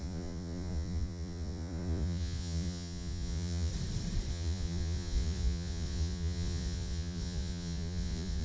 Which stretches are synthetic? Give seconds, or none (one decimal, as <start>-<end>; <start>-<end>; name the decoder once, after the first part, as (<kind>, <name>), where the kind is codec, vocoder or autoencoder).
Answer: 0.0-3.7 (vocoder, Vocos); 4.3-8.4

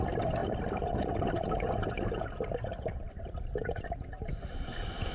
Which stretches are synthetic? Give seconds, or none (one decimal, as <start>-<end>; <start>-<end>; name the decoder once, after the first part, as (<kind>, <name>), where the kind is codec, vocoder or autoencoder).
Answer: 0.4-3.5 (vocoder, BigVGAN v2)

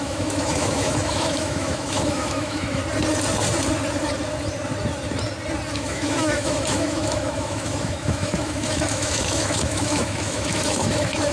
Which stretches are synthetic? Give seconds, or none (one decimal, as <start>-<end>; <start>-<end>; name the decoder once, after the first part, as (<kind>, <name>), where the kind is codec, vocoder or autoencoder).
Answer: 0.0-2.8 (autoencoder, DAC-VAE); 5.7-11.3

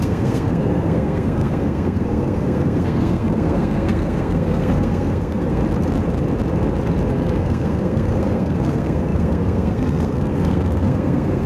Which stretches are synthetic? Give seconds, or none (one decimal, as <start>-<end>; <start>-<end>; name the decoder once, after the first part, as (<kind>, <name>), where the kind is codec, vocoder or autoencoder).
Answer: 0.0-5.6 (codec, SNAC); 7.1-11.5

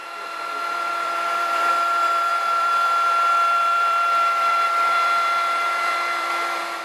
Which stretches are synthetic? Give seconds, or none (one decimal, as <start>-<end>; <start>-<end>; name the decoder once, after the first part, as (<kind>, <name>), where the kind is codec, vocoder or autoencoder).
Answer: 0.0-6.8 (vocoder, BigVGAN v2)

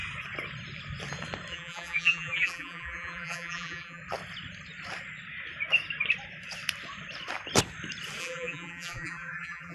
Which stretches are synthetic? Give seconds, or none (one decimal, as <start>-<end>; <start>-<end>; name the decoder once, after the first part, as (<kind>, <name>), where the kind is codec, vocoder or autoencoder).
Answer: 1.5-4.0 (vocoder, BigVGAN v2); 8.2-9.7